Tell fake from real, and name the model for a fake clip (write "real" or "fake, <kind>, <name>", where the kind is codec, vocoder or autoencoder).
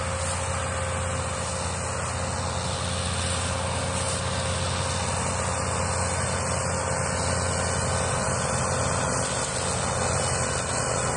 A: real